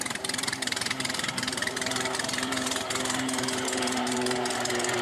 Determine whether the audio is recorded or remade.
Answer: remade